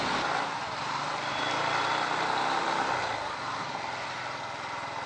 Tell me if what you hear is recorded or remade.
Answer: recorded